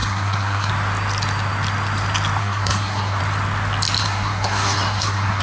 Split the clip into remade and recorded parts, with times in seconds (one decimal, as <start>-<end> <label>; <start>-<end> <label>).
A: 0.0-0.7 remade; 0.7-2.4 recorded; 2.4-3.2 remade; 3.2-4.0 recorded; 4.0-5.4 remade